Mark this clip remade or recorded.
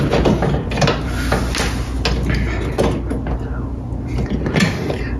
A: recorded